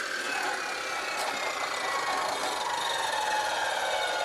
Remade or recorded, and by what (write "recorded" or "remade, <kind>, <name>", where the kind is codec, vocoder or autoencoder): recorded